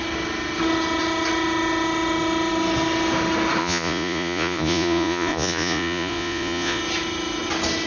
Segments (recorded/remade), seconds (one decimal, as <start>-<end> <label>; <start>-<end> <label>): 0.0-3.6 recorded; 3.6-6.8 remade; 6.8-7.9 recorded